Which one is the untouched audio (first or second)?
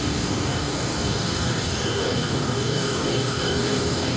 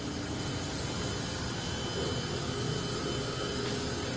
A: second